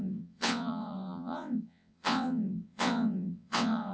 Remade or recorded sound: remade